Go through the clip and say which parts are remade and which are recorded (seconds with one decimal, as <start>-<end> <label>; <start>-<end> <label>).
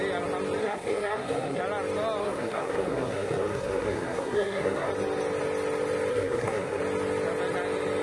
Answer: 0.0-0.6 recorded; 0.6-1.6 remade; 1.6-2.2 recorded; 2.2-4.9 remade; 4.9-6.1 recorded; 6.1-6.8 remade; 6.8-8.0 recorded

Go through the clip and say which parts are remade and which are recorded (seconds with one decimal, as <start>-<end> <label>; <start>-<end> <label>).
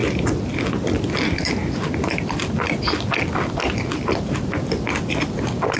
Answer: 0.0-5.8 recorded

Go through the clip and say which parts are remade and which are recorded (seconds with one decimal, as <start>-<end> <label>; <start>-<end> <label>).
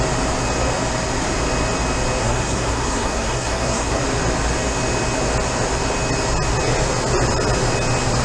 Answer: 0.0-2.2 recorded; 2.2-4.0 remade; 4.0-8.2 recorded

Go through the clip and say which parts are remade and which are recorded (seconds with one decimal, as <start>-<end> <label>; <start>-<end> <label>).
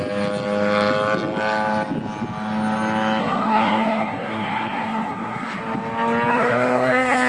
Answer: 0.0-3.2 recorded; 3.2-5.6 remade; 5.6-6.3 recorded; 6.3-7.3 remade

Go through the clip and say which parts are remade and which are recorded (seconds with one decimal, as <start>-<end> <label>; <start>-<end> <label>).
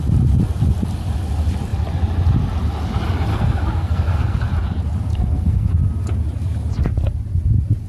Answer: 0.0-3.3 recorded; 3.3-4.5 remade; 4.5-5.1 recorded; 5.1-5.7 remade; 5.7-7.9 recorded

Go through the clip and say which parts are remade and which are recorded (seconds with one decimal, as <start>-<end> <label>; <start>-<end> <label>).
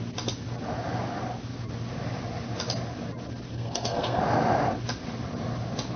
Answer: 0.0-3.5 recorded; 3.5-4.2 remade; 4.2-6.0 recorded